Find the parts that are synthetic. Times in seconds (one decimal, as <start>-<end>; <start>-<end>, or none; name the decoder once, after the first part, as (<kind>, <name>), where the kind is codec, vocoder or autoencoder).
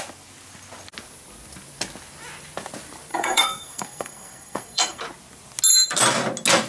3.1-5.0 (codec, SNAC)